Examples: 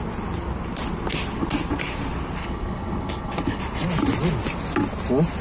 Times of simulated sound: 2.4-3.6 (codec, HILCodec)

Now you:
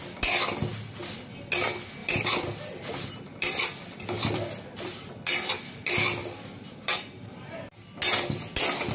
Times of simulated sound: 2.0-5.2 (vocoder, BigVGAN v2); 6.2-8.0

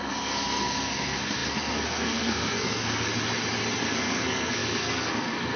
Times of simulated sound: 0.0-3.1 (codec, SNAC); 3.8-5.6

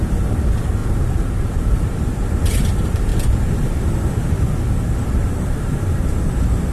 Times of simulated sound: 0.0-3.1 (vocoder, BigVGAN v2)

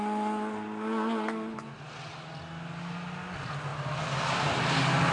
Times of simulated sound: none

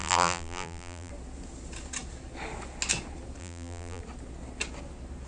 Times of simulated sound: 0.0-1.1 (vocoder, BigVGAN v2); 3.4-4.0

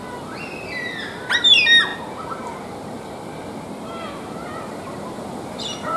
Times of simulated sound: none